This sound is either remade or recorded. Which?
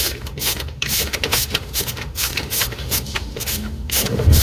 remade